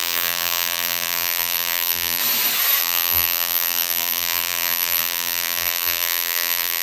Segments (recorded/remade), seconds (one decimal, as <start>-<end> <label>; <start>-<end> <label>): 0.0-2.2 remade; 2.2-2.8 recorded; 2.8-6.8 remade